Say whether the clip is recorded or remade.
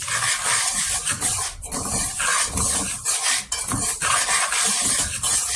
recorded